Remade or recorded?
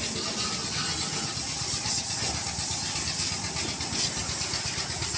recorded